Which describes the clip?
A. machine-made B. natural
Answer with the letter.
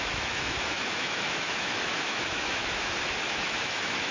A